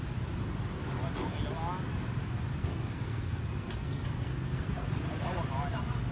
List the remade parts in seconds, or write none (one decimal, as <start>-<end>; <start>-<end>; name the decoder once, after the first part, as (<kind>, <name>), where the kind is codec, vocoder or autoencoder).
2.6-4.9 (codec, SNAC)